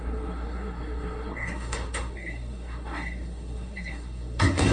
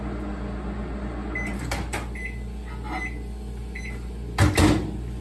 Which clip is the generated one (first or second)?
first